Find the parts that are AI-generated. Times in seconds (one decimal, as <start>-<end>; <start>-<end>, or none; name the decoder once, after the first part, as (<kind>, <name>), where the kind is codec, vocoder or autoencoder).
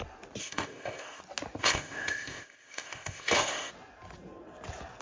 0.4-1.2 (codec, ZipCodec); 1.6-3.7